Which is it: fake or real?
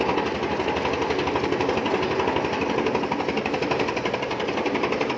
real